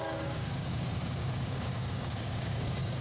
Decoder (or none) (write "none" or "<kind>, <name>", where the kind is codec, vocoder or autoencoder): codec, DAC